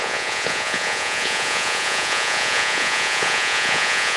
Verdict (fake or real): fake